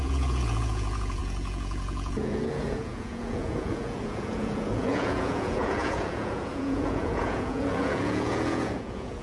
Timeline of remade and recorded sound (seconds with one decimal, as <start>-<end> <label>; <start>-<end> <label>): 0.0-9.2 remade